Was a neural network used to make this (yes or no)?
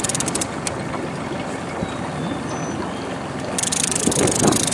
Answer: no